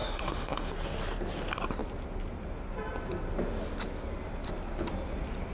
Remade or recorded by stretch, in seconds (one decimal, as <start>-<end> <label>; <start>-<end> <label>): 0.0-0.7 remade; 0.7-5.5 recorded